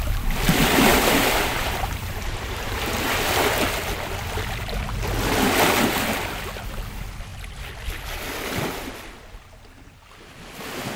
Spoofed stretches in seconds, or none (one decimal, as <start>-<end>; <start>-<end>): 0.9-3.3